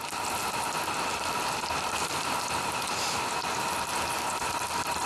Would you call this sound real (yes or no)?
yes